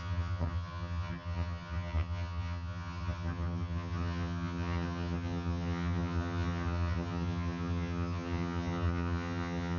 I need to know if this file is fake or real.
fake